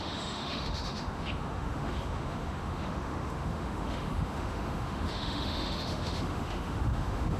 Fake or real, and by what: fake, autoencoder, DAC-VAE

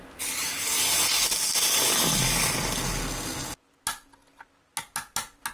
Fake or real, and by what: real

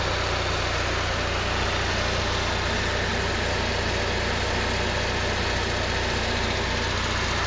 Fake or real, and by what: real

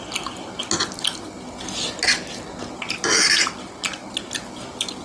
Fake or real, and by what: real